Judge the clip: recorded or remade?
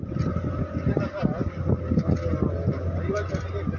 recorded